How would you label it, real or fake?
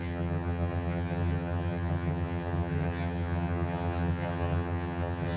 fake